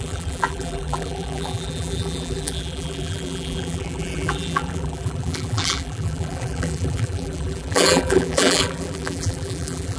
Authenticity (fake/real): fake